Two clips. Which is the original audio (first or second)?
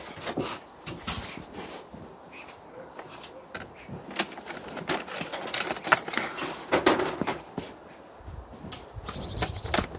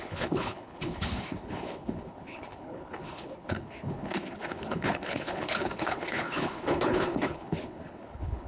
first